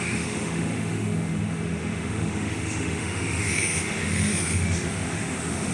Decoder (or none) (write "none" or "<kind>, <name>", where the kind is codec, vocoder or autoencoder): autoencoder, DAC-VAE